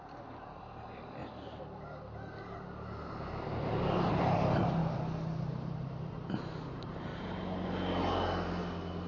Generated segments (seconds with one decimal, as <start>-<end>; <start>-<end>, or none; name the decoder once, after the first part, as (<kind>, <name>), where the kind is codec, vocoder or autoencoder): 0.0-1.2 (vocoder, BigVGAN v2); 4.1-4.8; 5.5-7.1